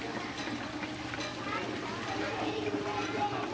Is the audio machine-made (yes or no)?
no